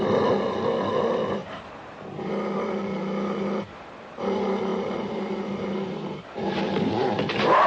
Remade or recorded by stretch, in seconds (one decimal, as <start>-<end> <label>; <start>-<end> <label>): 0.0-1.4 recorded; 1.4-2.3 remade; 2.3-4.7 recorded; 4.7-6.4 remade; 6.4-7.7 recorded